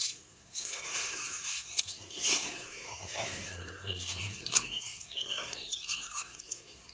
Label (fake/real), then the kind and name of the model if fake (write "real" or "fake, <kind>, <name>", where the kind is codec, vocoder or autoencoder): fake, codec, SNAC